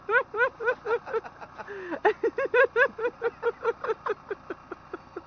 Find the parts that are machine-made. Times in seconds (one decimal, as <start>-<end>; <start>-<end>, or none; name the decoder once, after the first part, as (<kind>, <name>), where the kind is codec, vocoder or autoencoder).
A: none